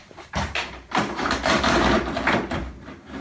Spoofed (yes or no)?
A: yes